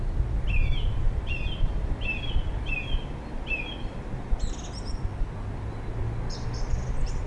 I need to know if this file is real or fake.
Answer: fake